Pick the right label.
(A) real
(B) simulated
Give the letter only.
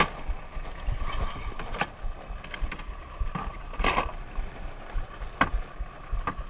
A